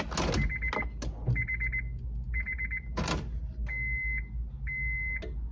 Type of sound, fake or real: real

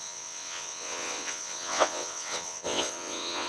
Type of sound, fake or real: fake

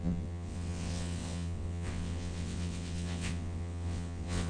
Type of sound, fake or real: fake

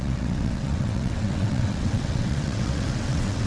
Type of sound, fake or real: fake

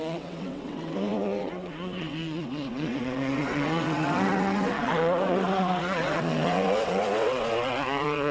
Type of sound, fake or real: fake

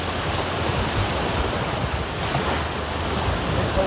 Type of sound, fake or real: real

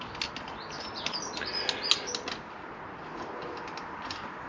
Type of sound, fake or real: real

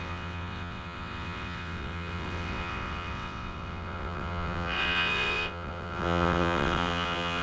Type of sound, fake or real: fake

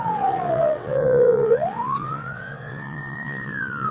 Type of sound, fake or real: fake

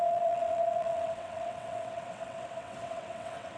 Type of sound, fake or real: fake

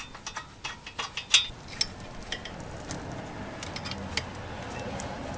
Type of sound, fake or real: real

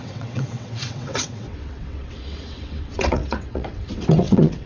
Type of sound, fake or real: fake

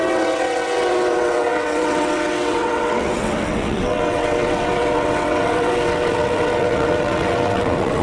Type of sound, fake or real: fake